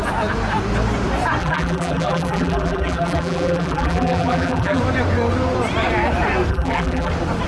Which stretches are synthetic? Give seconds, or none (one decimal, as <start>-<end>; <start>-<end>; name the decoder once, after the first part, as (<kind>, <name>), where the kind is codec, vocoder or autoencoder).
1.4-4.8 (vocoder, BigVGAN v2); 6.5-7.1